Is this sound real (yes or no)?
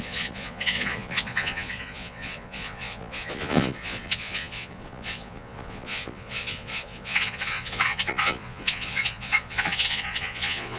no